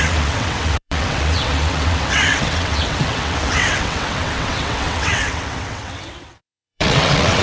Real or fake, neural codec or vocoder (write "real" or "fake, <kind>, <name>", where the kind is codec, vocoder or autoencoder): fake, vocoder, WaveNeXt